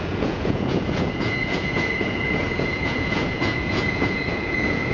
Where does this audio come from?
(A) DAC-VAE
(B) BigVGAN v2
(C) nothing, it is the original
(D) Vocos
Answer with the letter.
D